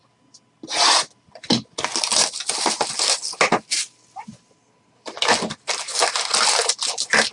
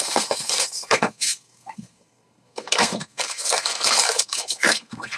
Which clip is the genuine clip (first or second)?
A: first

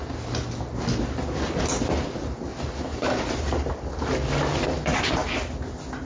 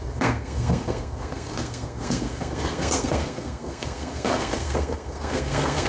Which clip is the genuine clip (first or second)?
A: first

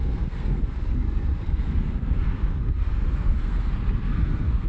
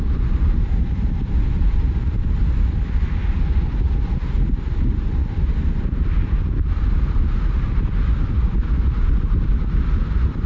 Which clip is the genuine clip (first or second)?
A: second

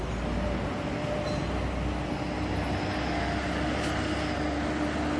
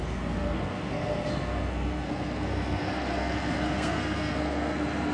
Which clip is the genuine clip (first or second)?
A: first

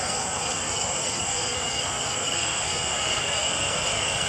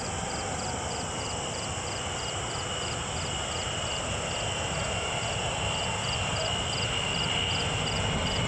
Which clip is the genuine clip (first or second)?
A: second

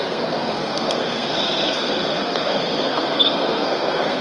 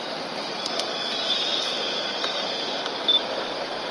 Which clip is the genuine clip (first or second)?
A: second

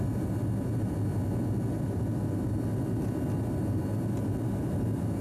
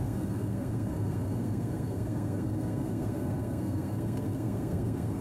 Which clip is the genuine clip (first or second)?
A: first